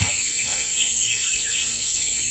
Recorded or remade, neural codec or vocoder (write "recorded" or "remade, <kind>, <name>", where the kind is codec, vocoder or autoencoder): remade, codec, SNAC